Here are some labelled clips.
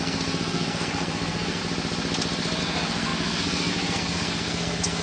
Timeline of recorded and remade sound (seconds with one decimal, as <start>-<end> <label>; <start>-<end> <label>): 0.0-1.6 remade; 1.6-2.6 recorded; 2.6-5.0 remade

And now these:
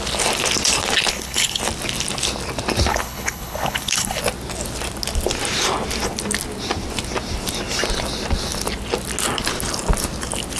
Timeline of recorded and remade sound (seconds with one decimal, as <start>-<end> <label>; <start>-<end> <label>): 0.0-1.1 recorded; 1.1-1.6 remade; 1.6-2.9 recorded; 2.9-4.2 remade; 4.2-10.6 recorded

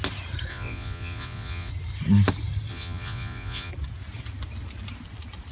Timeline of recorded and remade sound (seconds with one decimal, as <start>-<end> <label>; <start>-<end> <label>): 0.0-0.5 recorded; 0.5-1.7 remade; 1.7-2.7 recorded; 2.7-3.7 remade; 3.7-5.5 recorded